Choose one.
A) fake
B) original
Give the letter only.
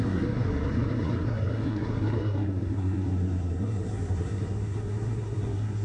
A